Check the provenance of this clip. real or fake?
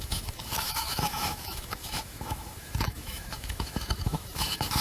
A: fake